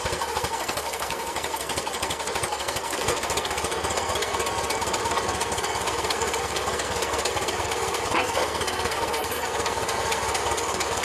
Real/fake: fake